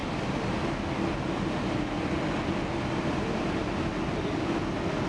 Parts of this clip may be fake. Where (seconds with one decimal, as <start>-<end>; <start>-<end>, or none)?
none